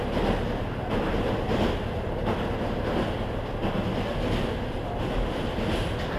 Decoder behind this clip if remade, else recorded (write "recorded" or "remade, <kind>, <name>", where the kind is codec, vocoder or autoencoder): recorded